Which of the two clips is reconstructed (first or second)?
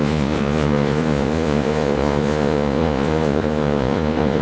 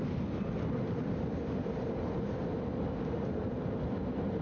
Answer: first